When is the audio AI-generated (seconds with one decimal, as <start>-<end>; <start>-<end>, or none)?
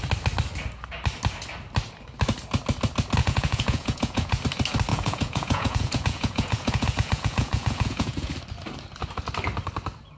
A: 3.2-4.4; 4.9-8.3